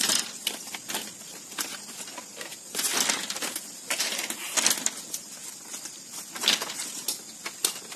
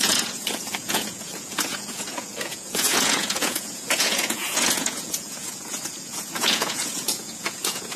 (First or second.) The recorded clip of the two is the first